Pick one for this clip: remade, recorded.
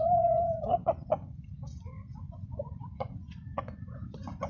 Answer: remade